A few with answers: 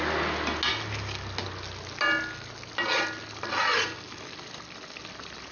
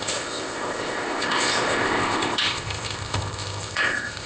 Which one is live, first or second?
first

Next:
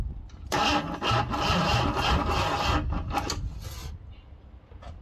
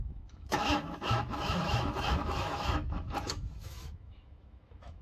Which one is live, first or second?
first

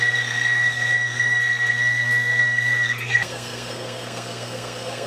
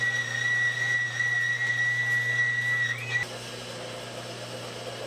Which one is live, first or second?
second